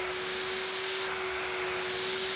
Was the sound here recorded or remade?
recorded